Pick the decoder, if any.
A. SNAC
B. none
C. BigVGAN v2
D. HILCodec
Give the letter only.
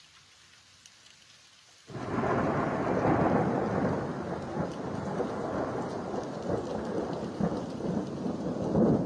B